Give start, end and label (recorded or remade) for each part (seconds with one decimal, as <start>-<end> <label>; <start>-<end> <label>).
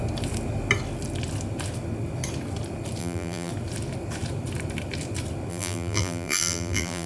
0.0-3.0 recorded; 3.0-3.5 remade; 3.5-5.5 recorded; 5.5-7.1 remade